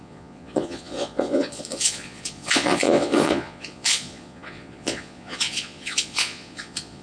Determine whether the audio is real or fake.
fake